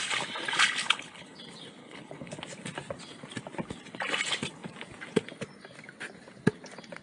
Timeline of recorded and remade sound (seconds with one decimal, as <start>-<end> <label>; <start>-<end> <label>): 0.0-0.8 recorded; 0.8-1.4 remade; 1.4-1.8 recorded; 1.8-2.4 remade; 2.4-7.0 recorded